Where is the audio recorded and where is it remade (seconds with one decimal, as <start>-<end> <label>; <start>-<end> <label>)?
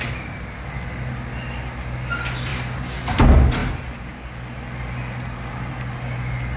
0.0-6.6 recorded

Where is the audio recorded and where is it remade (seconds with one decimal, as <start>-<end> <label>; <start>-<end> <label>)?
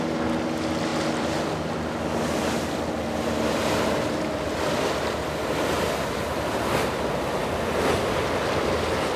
0.0-9.2 recorded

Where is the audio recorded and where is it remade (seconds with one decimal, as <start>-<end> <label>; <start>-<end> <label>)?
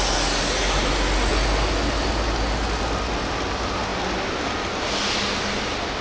0.0-6.0 recorded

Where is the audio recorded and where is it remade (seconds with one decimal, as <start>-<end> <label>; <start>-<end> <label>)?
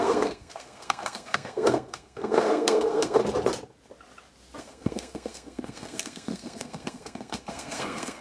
0.0-3.2 remade; 3.2-4.6 recorded; 4.6-8.2 remade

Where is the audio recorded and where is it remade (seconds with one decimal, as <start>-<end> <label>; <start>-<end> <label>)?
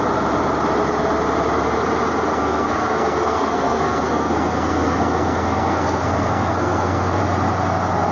0.0-2.3 recorded; 2.3-7.2 remade; 7.2-8.1 recorded